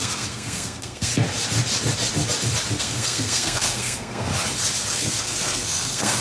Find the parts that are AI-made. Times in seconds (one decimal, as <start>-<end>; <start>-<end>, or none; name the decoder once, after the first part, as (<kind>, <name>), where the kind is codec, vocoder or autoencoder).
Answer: 0.0-1.1 (codec, SNAC); 2.8-4.3; 4.9-6.2

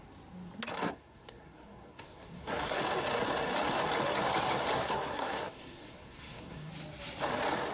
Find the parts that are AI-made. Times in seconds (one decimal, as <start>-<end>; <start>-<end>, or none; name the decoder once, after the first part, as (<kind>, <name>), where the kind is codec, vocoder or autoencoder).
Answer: 0.7-2.8 (codec, SNAC); 4.7-6.7

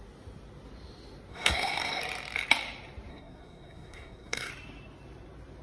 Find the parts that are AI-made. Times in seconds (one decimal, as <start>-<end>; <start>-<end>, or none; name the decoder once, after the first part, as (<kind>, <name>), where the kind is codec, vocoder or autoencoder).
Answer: 1.3-2.0 (codec, SNAC); 3.1-4.5

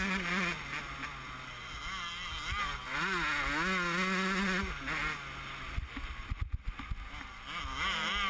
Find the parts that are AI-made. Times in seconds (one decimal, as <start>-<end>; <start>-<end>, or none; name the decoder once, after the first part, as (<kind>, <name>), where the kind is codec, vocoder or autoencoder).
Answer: none

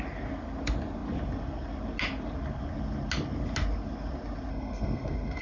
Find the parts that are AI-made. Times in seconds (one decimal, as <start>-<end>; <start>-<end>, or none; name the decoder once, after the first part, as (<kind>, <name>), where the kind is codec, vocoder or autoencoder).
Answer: 4.5-5.4 (codec, SNAC)

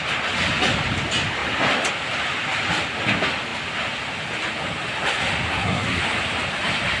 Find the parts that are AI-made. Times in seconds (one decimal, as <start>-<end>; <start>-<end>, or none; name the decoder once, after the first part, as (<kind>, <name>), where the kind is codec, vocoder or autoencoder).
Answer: 5.5-6.0 (codec, SNAC)

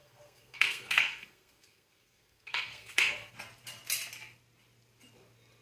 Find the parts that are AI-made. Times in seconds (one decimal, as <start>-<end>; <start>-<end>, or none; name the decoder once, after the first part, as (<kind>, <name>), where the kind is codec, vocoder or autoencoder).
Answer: 0.0-3.3 (codec, SNAC)